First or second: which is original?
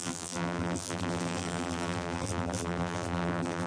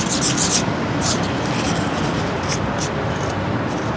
second